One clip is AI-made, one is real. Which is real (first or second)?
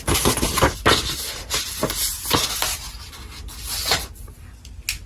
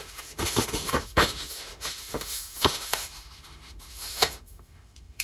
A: first